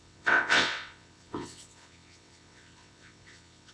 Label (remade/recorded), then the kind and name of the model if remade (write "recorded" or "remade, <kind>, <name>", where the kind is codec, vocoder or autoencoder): remade, vocoder, WaveNeXt